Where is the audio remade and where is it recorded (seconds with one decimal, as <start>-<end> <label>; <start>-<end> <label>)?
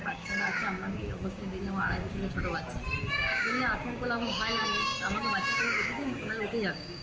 0.0-2.2 remade; 2.2-3.1 recorded; 3.1-7.0 remade